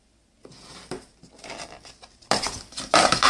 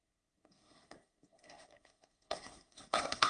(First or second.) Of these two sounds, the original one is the first